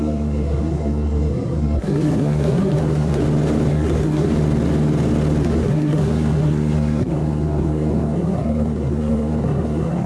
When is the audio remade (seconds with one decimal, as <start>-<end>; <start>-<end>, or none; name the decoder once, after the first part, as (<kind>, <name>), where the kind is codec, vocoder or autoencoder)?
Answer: 0.0-3.2 (codec, SNAC); 3.7-4.3; 5.4-10.1